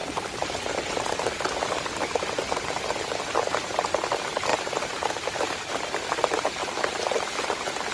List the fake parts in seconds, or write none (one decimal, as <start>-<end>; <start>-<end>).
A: 4.5-5.7; 6.6-7.9